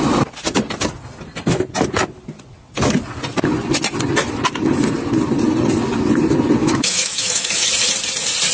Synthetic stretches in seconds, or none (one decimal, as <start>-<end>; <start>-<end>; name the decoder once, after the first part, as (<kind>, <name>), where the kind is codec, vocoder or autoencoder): 6.6-7.7 (autoencoder, DAC-VAE)